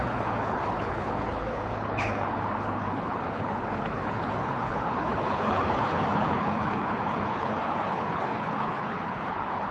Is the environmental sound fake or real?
fake